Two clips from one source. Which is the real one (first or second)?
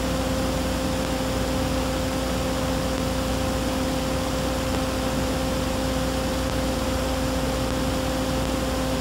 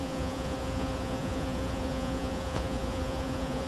first